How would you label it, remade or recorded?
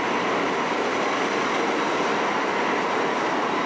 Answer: recorded